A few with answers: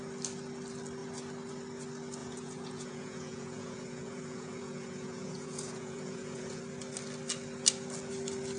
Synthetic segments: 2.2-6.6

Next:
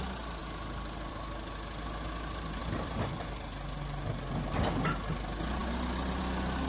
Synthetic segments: none

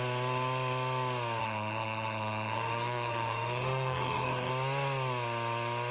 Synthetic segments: 1.4-4.5

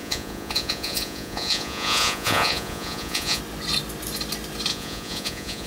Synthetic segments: 0.0-3.4; 4.7-5.7

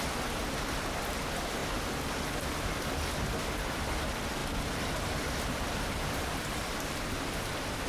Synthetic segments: 0.4-1.0; 4.4-7.9

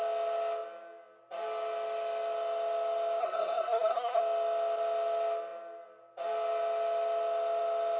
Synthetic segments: 3.2-4.2

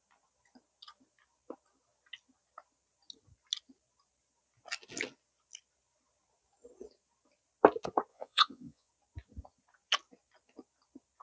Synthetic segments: 8.1-8.9

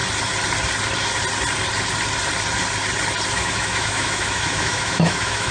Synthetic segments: 3.3-5.5